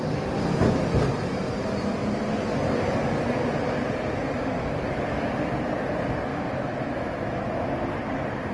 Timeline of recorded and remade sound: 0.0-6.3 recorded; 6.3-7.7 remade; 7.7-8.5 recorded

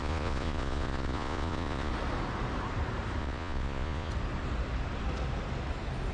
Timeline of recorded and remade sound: 0.0-1.9 remade; 1.9-3.2 recorded; 3.2-4.1 remade; 4.1-6.1 recorded

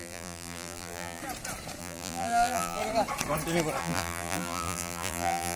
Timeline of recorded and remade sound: 0.0-1.2 remade; 1.2-1.8 recorded; 1.8-2.8 remade; 2.8-3.8 recorded; 3.8-5.6 remade

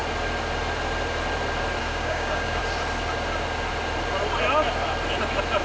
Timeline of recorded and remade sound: 0.0-1.8 recorded; 1.8-2.6 remade; 2.6-5.6 recorded

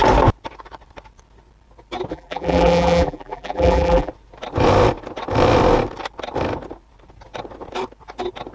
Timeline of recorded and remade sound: 0.0-2.1 recorded; 2.1-4.1 remade; 4.1-8.5 recorded

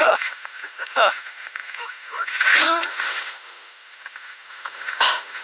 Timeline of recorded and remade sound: 0.0-5.4 remade

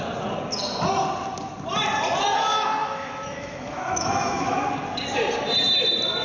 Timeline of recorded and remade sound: 0.0-2.8 recorded; 2.8-4.7 remade; 4.7-6.2 recorded